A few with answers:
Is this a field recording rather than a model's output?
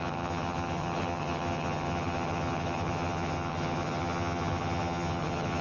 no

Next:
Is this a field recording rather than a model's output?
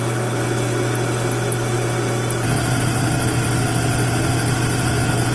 yes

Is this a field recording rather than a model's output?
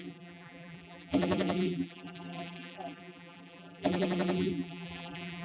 no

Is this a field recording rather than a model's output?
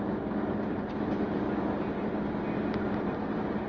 yes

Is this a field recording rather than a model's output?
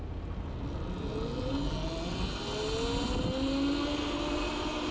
yes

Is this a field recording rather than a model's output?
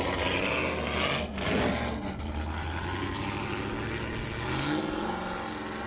yes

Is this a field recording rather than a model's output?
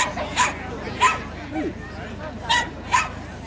yes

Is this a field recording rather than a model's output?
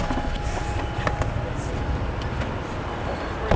yes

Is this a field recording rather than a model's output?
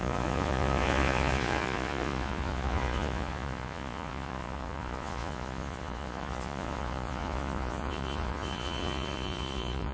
no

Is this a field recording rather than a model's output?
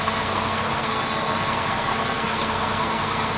no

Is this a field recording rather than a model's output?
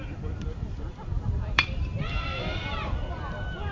no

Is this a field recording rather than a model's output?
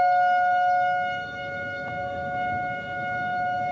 no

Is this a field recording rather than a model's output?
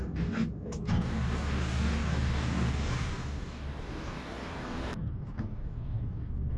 no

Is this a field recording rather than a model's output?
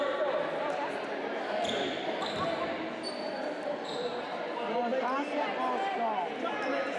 yes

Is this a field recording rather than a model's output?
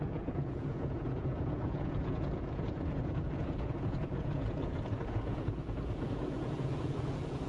no